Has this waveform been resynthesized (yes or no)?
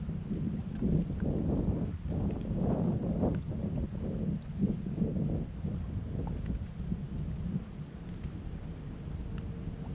no